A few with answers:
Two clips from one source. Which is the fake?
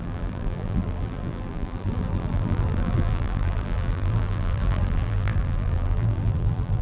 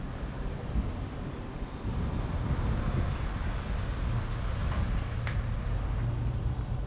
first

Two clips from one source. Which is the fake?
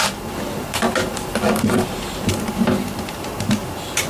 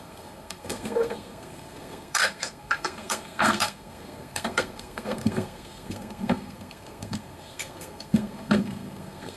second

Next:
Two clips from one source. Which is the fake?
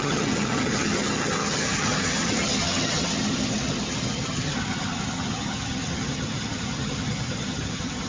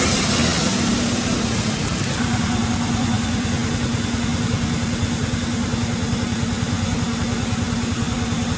first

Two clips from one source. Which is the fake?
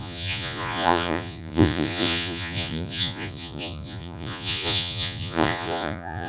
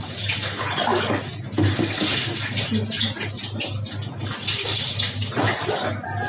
first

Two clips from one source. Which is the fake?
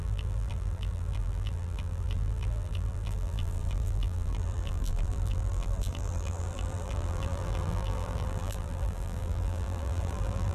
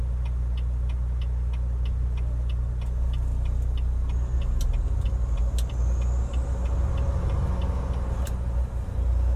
first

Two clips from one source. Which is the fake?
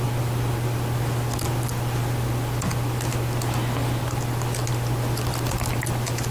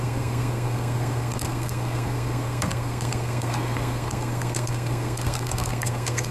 second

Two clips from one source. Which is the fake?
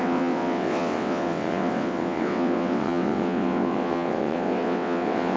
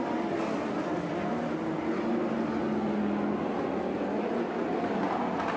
first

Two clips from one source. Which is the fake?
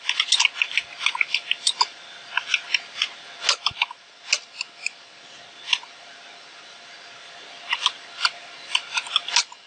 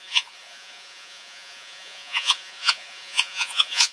second